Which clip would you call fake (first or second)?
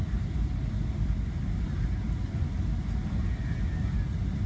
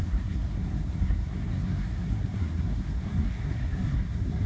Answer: second